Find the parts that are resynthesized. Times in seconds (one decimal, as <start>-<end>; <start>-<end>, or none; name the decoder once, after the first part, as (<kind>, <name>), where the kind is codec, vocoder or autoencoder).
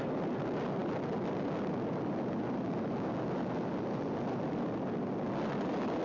none